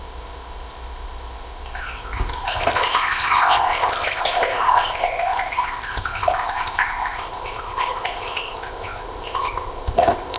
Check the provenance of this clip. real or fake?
fake